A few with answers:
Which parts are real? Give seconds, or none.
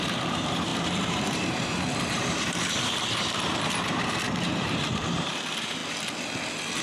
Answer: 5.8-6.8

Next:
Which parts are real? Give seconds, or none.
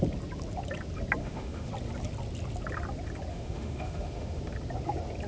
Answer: 0.0-1.2; 1.7-3.3; 4.4-5.3